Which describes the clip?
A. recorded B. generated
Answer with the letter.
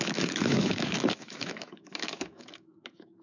B